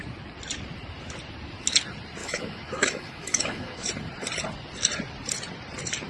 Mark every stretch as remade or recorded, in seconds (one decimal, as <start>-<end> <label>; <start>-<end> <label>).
0.0-2.2 recorded; 2.2-3.9 remade; 3.9-6.1 recorded